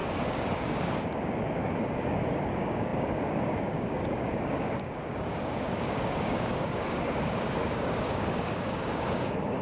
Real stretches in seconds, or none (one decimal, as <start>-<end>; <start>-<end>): none